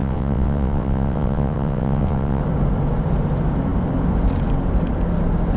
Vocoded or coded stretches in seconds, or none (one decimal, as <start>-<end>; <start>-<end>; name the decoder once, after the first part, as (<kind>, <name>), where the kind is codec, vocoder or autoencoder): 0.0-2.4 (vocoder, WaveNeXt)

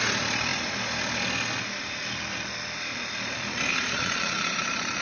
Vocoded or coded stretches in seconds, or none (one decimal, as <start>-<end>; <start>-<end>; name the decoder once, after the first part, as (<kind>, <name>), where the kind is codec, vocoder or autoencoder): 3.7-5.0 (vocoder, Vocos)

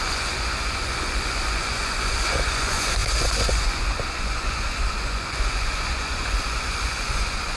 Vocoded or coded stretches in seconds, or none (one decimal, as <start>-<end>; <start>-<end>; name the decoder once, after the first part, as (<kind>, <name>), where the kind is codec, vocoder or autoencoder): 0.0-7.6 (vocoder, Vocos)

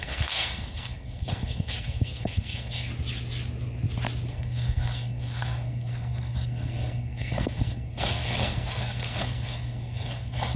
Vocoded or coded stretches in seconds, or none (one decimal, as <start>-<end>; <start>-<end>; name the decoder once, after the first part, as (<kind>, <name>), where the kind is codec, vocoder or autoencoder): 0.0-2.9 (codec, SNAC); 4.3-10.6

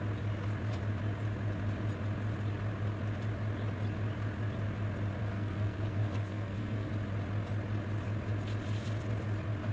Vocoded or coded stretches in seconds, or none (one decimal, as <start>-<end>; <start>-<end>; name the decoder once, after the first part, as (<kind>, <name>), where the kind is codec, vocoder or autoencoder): 5.2-6.9 (codec, SNAC)

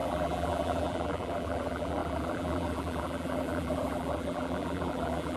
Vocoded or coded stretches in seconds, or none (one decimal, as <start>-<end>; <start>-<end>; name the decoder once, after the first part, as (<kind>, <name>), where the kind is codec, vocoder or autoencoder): 0.0-5.4 (vocoder, BigVGAN v2)

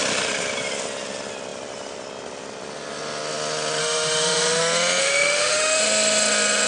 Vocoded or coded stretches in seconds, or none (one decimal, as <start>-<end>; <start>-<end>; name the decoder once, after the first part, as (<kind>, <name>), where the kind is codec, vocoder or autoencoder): 3.8-4.6 (autoencoder, DAC-VAE); 5.0-5.8